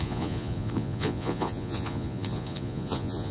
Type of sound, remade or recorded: remade